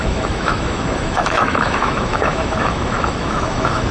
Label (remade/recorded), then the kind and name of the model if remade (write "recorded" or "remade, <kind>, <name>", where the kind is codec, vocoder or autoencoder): remade, autoencoder, DAC-VAE